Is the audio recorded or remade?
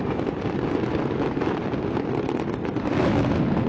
recorded